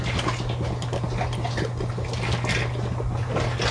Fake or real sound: real